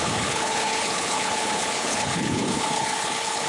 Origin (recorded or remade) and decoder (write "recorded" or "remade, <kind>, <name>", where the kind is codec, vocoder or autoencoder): remade, codec, HILCodec